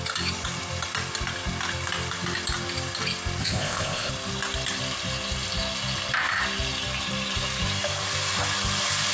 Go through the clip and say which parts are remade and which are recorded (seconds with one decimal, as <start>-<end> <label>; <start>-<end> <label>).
0.0-3.4 recorded; 3.4-4.1 remade; 4.1-9.1 recorded